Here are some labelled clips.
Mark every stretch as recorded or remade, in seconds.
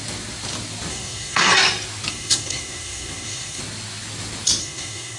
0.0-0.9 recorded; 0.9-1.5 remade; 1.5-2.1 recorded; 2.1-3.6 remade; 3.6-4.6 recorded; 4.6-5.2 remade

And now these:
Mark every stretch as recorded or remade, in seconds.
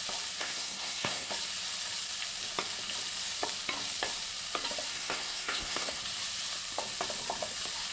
0.0-0.4 recorded; 0.4-1.3 remade; 1.3-4.9 recorded; 4.9-6.0 remade; 6.0-7.9 recorded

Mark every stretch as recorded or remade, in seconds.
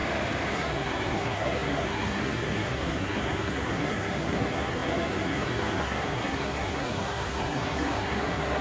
0.0-0.5 recorded; 0.5-8.6 remade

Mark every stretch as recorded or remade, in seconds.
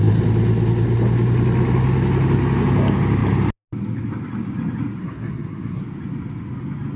0.0-5.0 recorded; 5.0-5.8 remade; 5.8-7.0 recorded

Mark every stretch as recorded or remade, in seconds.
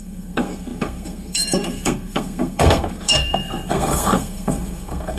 0.0-5.2 remade